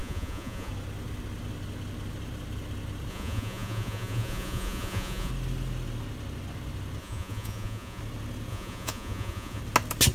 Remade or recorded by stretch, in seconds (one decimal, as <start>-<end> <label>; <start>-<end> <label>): 0.0-0.7 remade; 0.7-3.1 recorded; 3.1-5.3 remade; 5.3-7.0 recorded; 7.0-8.0 remade; 8.0-8.5 recorded; 8.5-9.6 remade; 9.6-10.1 recorded